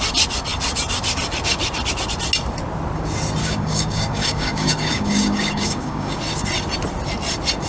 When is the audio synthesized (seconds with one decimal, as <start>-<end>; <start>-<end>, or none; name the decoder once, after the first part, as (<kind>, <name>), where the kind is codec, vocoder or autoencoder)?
3.4-6.2 (codec, DAC)